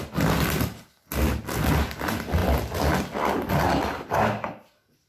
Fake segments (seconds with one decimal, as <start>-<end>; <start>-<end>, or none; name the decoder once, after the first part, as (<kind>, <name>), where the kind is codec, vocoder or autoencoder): none